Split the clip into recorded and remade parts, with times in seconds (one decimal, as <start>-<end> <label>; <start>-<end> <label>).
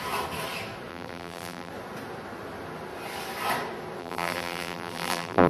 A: 0.0-0.9 recorded; 0.9-1.7 remade; 1.7-4.0 recorded; 4.0-5.5 remade